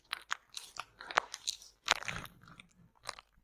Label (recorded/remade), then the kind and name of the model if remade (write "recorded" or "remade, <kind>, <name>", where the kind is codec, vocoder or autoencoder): recorded